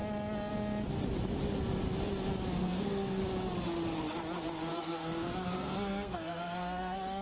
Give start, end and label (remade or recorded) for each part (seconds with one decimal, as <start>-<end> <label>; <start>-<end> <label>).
0.0-2.6 recorded; 2.6-3.2 remade; 3.2-4.7 recorded; 4.7-7.2 remade

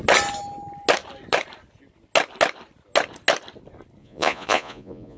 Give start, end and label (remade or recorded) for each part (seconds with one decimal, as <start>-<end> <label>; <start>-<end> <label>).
0.0-4.0 recorded; 4.0-5.2 remade

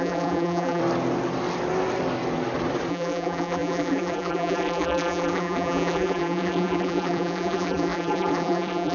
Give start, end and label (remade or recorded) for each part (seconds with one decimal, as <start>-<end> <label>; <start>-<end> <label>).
0.0-0.8 remade; 0.8-2.9 recorded; 2.9-8.9 remade

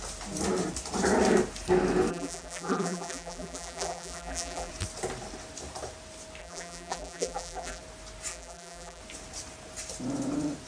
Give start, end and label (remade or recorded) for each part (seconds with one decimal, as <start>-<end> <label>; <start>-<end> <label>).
0.0-2.1 recorded; 2.1-4.7 remade; 4.7-6.4 recorded; 6.4-7.8 remade; 7.8-8.3 recorded; 8.3-9.0 remade; 9.0-10.7 recorded

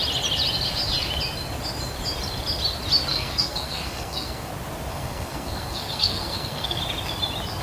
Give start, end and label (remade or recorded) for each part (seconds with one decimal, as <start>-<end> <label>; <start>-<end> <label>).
0.0-3.1 recorded; 3.1-4.5 remade; 4.5-4.9 recorded; 4.9-6.8 remade; 6.8-7.6 recorded

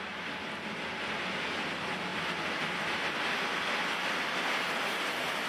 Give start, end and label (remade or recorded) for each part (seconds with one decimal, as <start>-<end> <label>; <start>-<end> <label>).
0.0-5.5 recorded